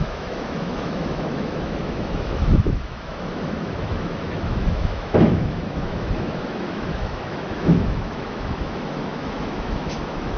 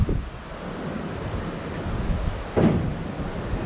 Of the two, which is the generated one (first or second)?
first